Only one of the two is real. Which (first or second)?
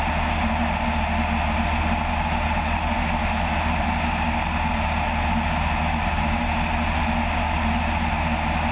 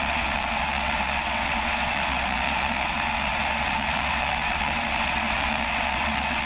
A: first